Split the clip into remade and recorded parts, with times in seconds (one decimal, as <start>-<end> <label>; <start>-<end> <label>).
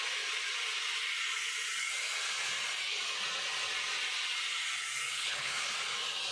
0.0-5.1 recorded; 5.1-5.7 remade; 5.7-6.3 recorded